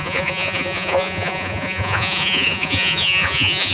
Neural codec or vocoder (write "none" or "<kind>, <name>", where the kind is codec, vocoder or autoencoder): vocoder, Vocos